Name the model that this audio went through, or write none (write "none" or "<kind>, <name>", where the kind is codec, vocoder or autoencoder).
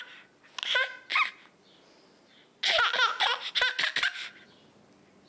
none